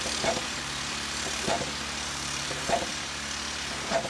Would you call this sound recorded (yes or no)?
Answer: no